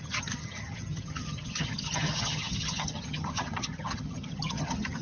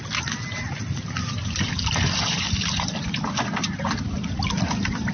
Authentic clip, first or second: second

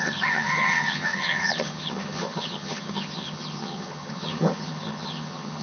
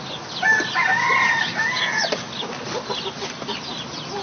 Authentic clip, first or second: second